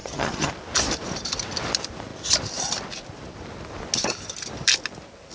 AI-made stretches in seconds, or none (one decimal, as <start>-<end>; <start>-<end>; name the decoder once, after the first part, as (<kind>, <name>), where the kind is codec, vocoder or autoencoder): 0.0-0.5 (vocoder, HiFi-GAN)